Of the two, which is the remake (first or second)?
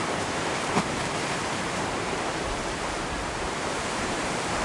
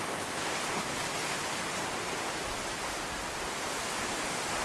first